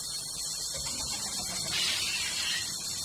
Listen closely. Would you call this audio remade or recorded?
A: remade